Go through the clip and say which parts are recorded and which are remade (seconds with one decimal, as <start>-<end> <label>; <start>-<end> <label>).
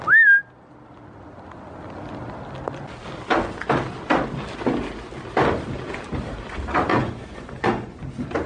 0.0-6.9 recorded; 6.9-8.0 remade; 8.0-8.5 recorded